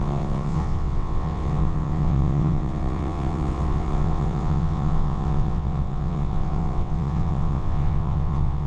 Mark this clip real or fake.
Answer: fake